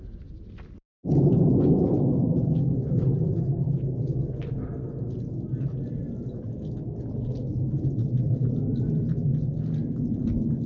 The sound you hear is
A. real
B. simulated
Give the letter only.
A